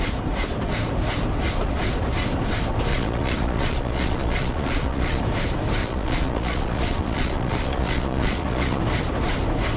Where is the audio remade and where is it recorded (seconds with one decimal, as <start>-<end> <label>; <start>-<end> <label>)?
0.0-2.9 recorded; 2.9-5.2 remade; 5.2-5.8 recorded; 5.8-8.8 remade; 8.8-9.8 recorded